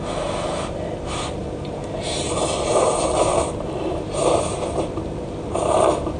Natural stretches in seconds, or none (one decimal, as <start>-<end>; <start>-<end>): 0.0-1.4; 2.8-3.3